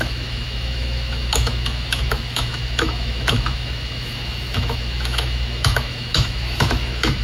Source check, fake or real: fake